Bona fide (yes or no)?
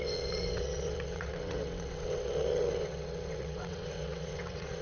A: no